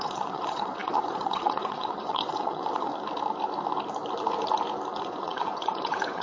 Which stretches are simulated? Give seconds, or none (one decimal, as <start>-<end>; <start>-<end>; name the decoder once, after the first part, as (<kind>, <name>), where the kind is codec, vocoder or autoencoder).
0.0-2.9 (vocoder, WaveNeXt); 5.0-6.2